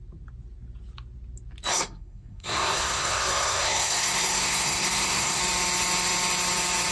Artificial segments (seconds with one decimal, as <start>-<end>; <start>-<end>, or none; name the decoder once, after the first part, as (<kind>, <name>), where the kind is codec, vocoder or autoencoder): 1.7-5.4 (codec, SNAC)